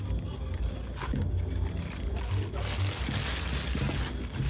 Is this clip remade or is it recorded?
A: recorded